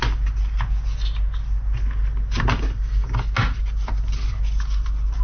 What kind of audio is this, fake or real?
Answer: real